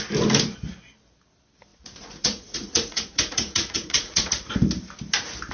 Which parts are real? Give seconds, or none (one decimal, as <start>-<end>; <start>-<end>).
0.0-1.7; 4.5-5.5